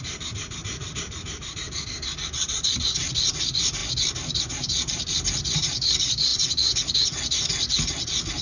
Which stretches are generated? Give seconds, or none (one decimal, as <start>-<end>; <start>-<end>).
0.0-1.4; 3.3-3.8; 4.4-6.3